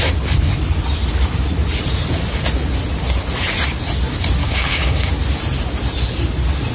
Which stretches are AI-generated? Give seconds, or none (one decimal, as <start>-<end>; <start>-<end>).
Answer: 4.4-5.1